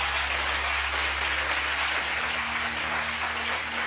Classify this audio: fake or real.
real